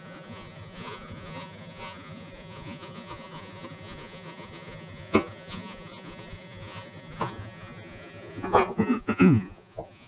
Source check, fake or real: fake